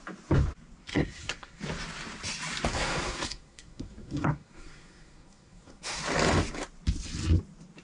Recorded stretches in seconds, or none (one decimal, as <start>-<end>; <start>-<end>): 0.0-0.9; 1.6-2.7; 6.0-7.8